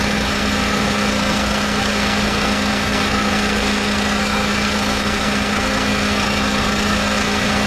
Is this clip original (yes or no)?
no